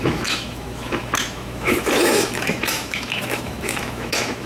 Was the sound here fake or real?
fake